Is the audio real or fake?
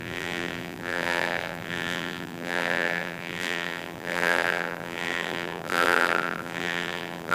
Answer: fake